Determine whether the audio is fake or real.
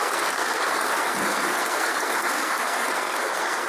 fake